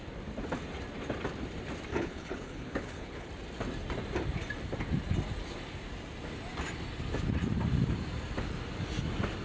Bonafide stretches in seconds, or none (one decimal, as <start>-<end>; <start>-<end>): 0.0-1.9; 3.3-9.4